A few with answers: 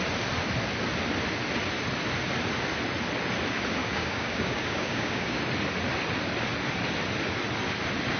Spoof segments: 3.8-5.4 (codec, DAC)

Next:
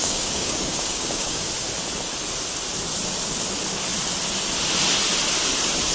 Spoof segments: 0.0-1.5 (codec, DAC)

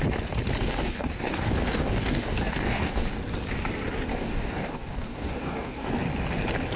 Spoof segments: 0.6-3.2 (codec, DAC); 4.1-5.9

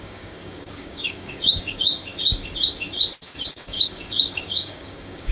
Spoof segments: 0.0-2.0 (codec, DAC); 3.5-5.3